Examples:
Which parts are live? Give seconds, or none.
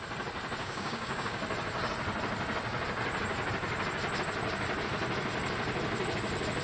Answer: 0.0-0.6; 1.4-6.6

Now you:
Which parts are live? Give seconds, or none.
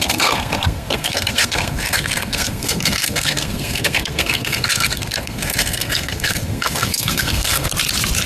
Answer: 7.7-8.3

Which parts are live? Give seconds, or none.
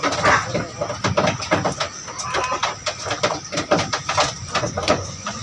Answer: 0.0-4.4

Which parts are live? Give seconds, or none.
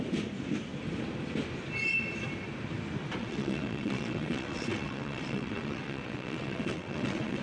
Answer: 0.0-3.2